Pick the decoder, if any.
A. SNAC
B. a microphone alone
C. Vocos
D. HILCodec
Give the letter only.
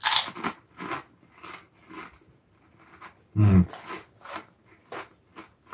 B